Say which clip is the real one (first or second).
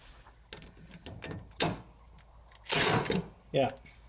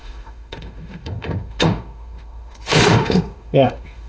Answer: first